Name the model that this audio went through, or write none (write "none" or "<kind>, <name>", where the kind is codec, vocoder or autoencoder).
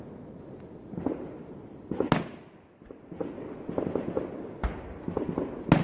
none